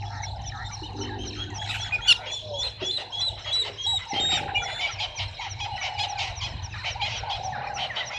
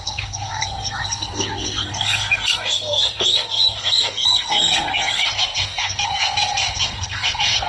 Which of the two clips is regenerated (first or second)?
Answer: second